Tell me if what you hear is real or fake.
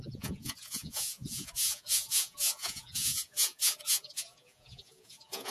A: fake